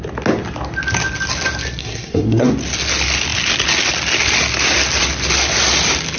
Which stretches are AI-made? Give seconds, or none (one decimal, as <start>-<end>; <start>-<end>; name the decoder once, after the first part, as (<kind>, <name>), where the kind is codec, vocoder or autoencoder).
1.8-2.5 (codec, SNAC)